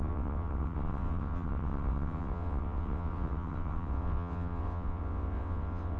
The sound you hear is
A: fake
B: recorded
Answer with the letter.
A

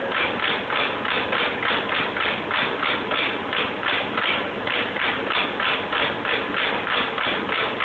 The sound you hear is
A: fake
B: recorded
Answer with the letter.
B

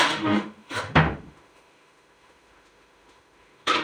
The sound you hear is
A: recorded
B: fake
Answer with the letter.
B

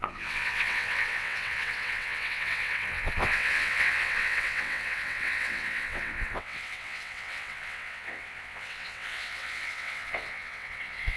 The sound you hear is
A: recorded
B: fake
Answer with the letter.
B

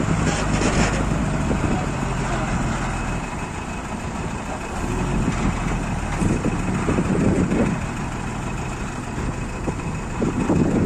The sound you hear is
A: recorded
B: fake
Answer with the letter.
A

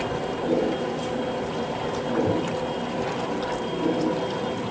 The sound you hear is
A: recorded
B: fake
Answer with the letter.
A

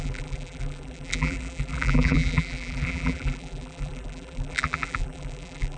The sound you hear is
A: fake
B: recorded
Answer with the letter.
A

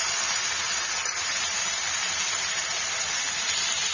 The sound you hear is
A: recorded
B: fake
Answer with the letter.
A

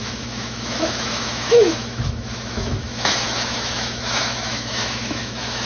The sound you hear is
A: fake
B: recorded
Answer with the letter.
A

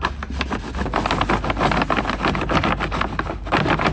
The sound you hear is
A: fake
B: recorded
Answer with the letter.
B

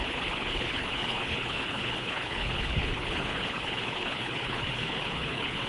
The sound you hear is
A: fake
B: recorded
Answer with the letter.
A